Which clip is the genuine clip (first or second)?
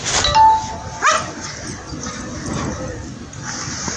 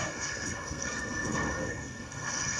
first